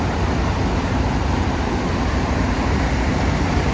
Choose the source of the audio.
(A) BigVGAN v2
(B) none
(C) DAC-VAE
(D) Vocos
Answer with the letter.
A